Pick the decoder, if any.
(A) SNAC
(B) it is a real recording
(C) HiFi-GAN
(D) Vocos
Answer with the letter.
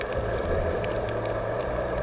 B